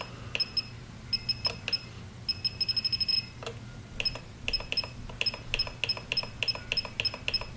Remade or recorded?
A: recorded